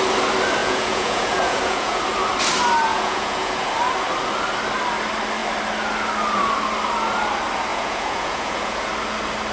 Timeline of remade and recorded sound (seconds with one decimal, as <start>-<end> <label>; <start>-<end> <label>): 0.0-0.6 recorded; 0.6-2.0 remade; 2.0-2.9 recorded; 2.9-3.7 remade; 3.7-7.7 recorded; 7.7-8.9 remade; 8.9-9.5 recorded